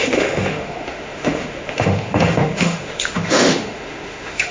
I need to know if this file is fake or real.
fake